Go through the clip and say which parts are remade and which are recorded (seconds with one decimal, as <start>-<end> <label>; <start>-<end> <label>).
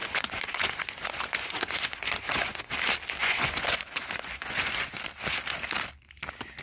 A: 0.0-2.7 remade; 2.7-3.2 recorded; 3.2-5.0 remade; 5.0-6.6 recorded